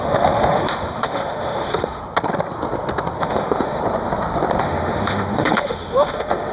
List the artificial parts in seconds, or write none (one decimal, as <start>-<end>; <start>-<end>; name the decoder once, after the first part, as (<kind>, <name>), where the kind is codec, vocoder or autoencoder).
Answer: 0.0-2.0 (autoencoder, DAC-VAE); 3.2-3.8; 4.6-6.5